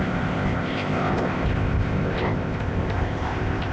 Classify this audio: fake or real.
fake